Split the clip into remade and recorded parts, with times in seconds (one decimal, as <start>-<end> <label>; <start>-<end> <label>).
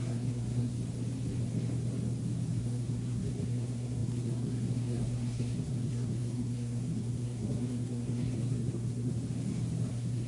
0.0-0.7 remade; 0.7-2.6 recorded; 2.6-9.1 remade; 9.1-9.9 recorded; 9.9-10.3 remade